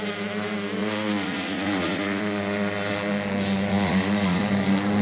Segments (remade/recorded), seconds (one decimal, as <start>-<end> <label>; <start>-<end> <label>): 0.0-0.8 recorded; 0.8-2.2 remade; 2.2-3.7 recorded; 3.7-4.4 remade; 4.4-5.0 recorded